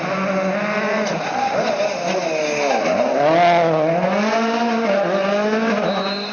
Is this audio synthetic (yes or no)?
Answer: no